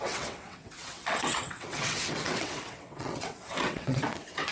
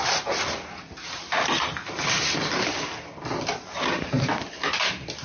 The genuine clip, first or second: second